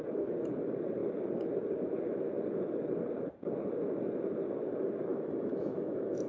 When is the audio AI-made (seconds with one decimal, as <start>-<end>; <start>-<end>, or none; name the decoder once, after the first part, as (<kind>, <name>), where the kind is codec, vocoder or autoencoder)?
5.1-6.3 (autoencoder, DAC-VAE)